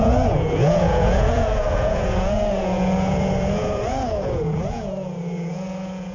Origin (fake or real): fake